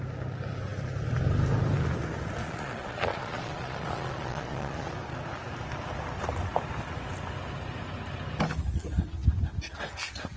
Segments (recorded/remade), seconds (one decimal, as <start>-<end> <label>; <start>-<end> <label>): 0.0-2.4 recorded; 2.4-4.9 remade; 4.9-10.4 recorded